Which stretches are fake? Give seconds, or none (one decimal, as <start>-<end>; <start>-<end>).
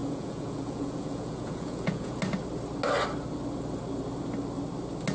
0.0-2.2